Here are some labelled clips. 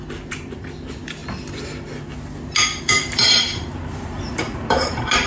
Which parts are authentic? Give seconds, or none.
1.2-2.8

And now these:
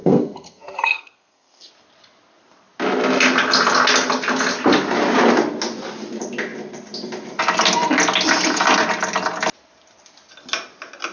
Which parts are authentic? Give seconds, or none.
1.7-11.1

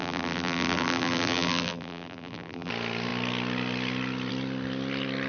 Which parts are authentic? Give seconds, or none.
2.7-5.3

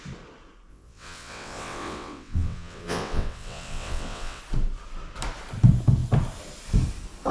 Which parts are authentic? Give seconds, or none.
0.0-0.7; 4.4-7.3

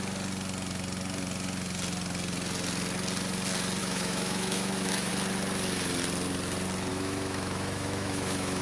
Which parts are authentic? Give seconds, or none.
0.0-3.8; 5.1-6.9

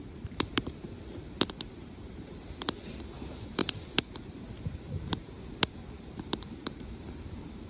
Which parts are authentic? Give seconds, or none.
none

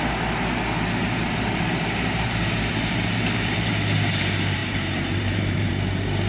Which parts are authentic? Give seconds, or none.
0.0-1.0; 3.7-4.6; 5.7-6.3